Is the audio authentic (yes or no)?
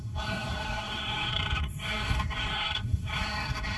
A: no